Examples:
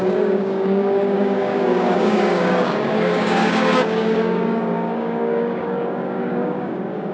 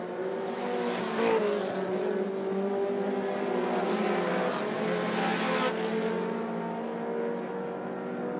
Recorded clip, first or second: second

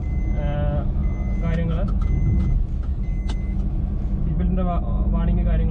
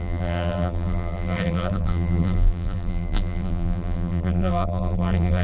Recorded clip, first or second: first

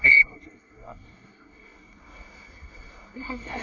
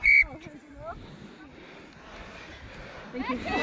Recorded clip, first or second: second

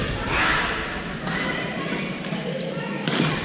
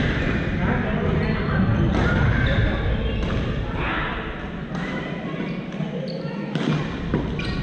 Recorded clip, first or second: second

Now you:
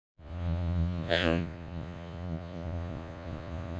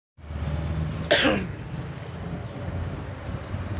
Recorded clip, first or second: second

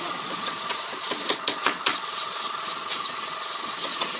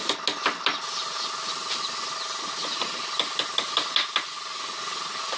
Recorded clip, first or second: second